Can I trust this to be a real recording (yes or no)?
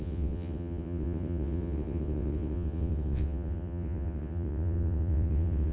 no